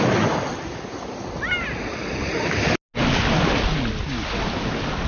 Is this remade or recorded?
recorded